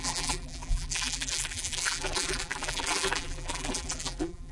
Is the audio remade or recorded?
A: remade